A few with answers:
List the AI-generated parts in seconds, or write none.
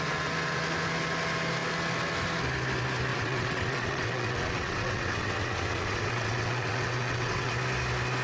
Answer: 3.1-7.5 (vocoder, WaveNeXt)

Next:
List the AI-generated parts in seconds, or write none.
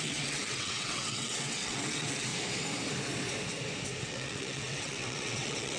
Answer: 0.0-2.3 (vocoder, WaveNeXt); 4.0-5.8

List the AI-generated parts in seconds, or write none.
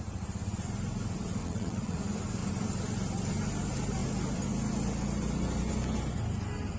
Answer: 1.4-2.0 (vocoder, WaveNeXt)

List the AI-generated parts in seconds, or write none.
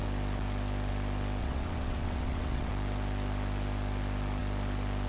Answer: 1.4-2.7 (vocoder, WaveNeXt)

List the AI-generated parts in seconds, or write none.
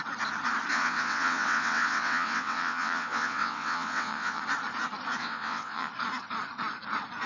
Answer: 0.7-4.4 (vocoder, WaveNeXt); 5.2-5.9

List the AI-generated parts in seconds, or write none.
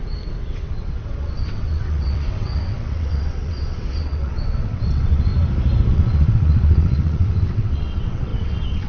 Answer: 0.0-5.3 (vocoder, WaveNeXt); 5.9-8.9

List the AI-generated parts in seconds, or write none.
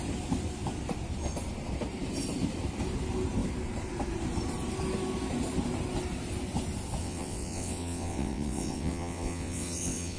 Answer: 7.0-10.2 (vocoder, WaveNeXt)